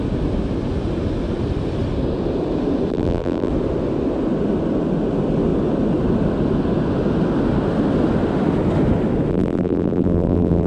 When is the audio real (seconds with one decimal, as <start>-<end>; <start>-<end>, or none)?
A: 0.0-2.9; 3.5-9.3